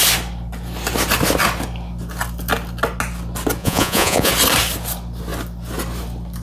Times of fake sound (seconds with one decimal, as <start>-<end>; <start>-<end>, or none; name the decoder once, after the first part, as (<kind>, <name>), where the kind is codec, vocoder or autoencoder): 3.6-4.3 (vocoder, Vocos)